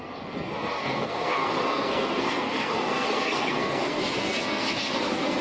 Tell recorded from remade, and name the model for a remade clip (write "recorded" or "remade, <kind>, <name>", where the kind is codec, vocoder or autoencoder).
remade, codec, SNAC